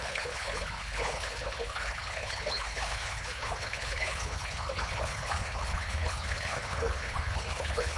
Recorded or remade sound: remade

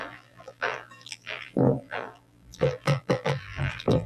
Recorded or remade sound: remade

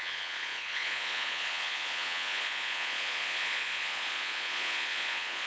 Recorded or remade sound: remade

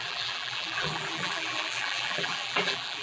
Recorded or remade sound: remade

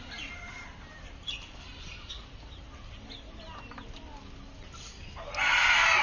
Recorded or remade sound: recorded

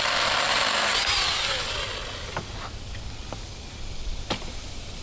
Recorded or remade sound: recorded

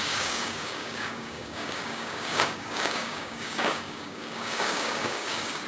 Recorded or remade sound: remade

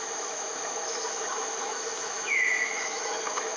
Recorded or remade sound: remade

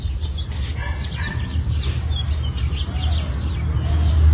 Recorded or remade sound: recorded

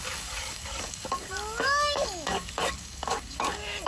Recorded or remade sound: remade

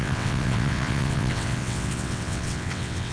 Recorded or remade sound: remade